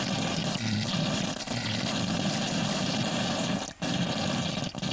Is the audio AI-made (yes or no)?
no